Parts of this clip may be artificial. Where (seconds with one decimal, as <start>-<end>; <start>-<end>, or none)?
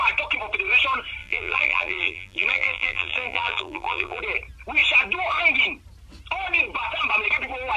1.2-4.2